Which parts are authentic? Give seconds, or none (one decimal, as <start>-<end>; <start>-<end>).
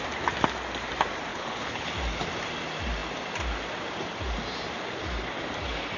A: 0.0-1.3; 1.9-6.0